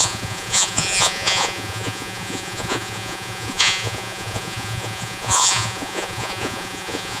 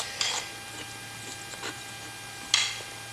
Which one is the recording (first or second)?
second